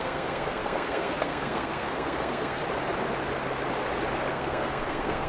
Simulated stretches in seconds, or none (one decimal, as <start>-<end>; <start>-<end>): 0.0-2.6; 4.3-5.3